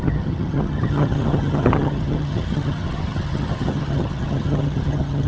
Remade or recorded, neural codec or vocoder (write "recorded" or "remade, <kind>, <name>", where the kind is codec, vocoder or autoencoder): remade, vocoder, HiFi-GAN